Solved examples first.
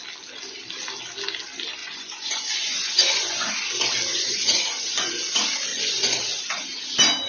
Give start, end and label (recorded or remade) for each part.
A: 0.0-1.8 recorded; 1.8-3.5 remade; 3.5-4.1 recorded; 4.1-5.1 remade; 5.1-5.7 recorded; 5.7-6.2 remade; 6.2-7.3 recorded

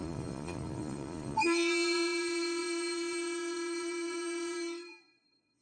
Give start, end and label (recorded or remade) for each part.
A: 0.0-5.6 remade

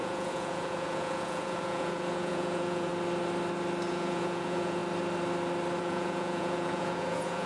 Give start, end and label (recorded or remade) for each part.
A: 0.0-2.9 remade; 2.9-3.9 recorded; 3.9-4.8 remade; 4.8-5.8 recorded; 5.8-7.5 remade

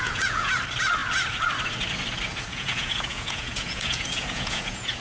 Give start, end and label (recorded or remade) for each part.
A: 0.0-0.5 remade; 0.5-2.3 recorded; 2.3-5.0 remade